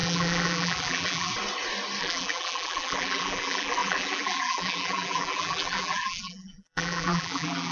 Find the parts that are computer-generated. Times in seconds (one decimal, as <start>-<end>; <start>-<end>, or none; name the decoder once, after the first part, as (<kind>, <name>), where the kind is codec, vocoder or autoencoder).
0.0-1.3 (vocoder, BigVGAN v2); 2.0-7.7